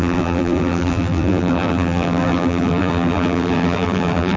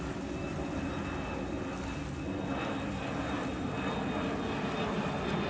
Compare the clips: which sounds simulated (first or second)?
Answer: first